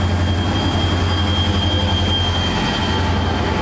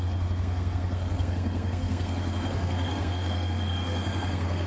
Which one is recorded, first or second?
first